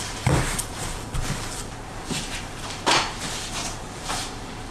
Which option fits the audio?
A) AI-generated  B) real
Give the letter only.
A